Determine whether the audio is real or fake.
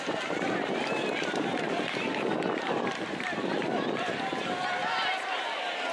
fake